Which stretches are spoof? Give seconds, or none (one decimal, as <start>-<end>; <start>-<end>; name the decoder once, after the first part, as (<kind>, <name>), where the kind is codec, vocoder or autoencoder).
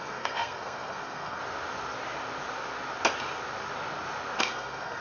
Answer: 0.0-1.4 (codec, SNAC); 4.4-5.0